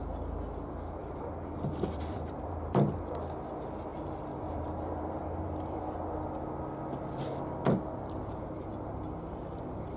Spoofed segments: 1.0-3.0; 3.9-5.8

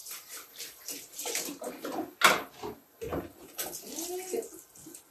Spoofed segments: 0.0-1.7; 3.1-3.6